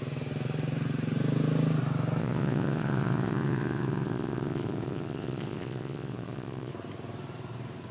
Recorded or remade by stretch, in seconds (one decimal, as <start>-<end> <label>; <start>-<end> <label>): 0.0-2.2 recorded; 2.2-6.7 remade; 6.7-7.9 recorded